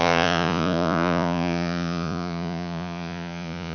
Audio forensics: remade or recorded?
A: remade